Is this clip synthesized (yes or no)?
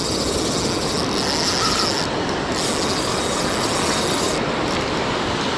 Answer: no